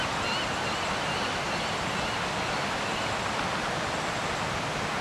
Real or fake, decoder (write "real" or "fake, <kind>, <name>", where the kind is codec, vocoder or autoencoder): real